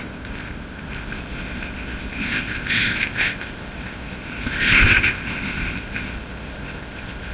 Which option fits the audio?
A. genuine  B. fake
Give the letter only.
B